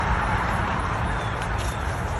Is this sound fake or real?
fake